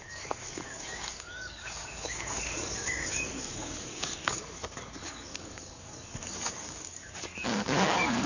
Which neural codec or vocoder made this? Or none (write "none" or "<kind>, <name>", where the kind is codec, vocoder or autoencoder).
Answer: codec, DAC